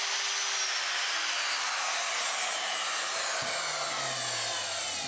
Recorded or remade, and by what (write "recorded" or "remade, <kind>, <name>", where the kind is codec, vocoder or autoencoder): recorded